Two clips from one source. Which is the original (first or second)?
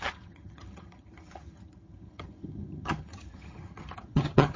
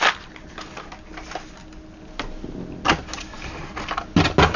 second